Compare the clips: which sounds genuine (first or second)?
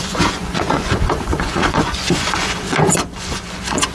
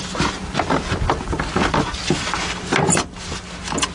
second